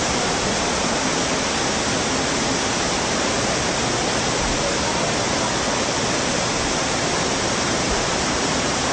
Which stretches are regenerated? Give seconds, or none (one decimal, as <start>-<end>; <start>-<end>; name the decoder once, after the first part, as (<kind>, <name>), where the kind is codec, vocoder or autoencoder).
0.0-1.1 (vocoder, BigVGAN v2); 6.3-8.9